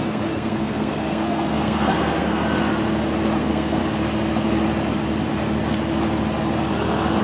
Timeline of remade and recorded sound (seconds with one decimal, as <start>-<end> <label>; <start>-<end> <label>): 0.0-2.4 remade; 2.4-3.4 recorded; 3.4-3.8 remade; 3.8-7.2 recorded